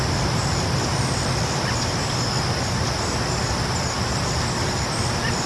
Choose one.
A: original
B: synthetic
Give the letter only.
A